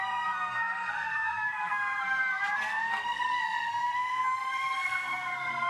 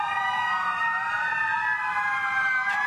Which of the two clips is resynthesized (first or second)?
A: first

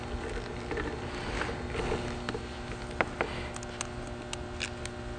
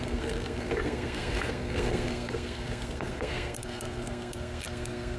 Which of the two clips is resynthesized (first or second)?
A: second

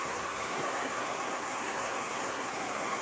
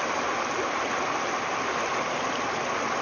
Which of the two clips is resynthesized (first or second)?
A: first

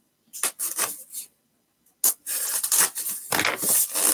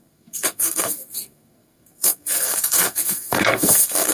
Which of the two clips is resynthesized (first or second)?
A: second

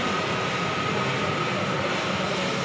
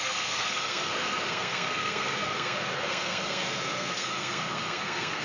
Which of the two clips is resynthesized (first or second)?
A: second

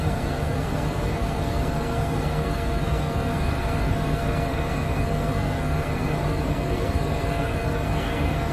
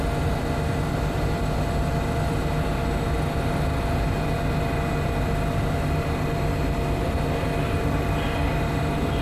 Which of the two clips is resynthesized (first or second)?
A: first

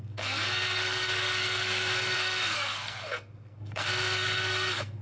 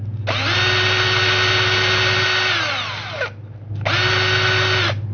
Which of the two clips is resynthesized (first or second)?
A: first